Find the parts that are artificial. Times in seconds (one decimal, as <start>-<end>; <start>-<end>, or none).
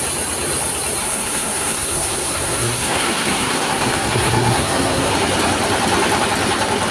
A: 1.0-5.1